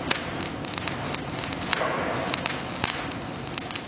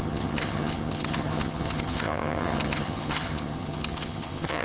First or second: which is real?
first